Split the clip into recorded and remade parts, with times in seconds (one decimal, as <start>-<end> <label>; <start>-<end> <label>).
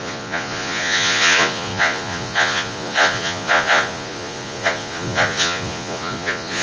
0.0-6.6 remade